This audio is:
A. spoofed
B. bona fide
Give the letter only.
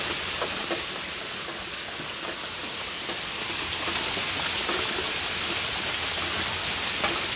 B